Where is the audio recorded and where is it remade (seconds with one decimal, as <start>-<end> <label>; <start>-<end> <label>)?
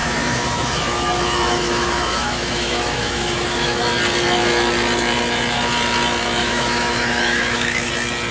0.0-3.8 remade; 3.8-6.4 recorded; 6.4-7.9 remade; 7.9-8.3 recorded